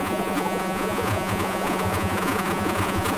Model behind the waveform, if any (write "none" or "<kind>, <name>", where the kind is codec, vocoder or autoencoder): vocoder, Vocos